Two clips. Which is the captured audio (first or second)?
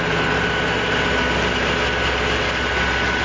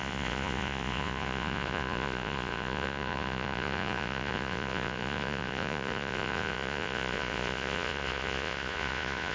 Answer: first